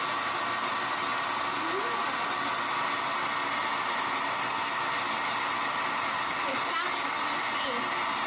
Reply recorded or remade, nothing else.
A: recorded